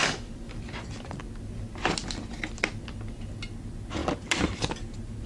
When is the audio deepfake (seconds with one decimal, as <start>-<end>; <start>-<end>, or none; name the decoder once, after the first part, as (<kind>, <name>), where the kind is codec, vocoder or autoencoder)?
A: 0.0-1.2 (vocoder, BigVGAN v2); 4.0-4.8